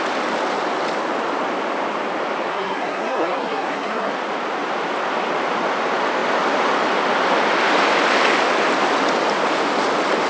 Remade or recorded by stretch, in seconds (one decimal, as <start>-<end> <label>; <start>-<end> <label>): 0.0-2.5 recorded; 2.5-4.1 remade; 4.1-10.3 recorded